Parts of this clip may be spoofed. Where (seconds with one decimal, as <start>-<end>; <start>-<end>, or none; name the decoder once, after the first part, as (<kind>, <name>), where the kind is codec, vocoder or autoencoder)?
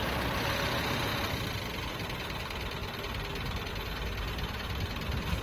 none